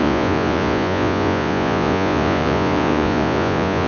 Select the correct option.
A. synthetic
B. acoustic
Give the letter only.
A